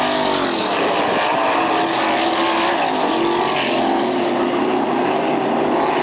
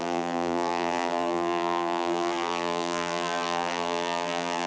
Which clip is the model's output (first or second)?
second